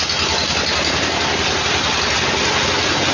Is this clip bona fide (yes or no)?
yes